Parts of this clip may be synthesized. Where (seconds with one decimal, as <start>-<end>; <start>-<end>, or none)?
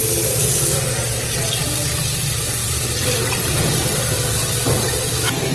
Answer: 1.1-5.5